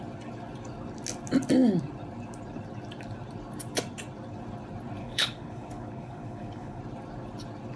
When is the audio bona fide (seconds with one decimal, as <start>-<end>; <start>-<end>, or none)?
0.0-5.0; 6.8-7.8